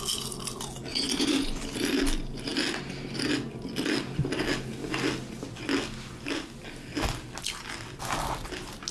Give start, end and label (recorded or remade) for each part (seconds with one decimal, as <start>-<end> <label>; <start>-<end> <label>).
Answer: 0.0-0.9 recorded; 0.9-1.6 remade; 1.6-8.9 recorded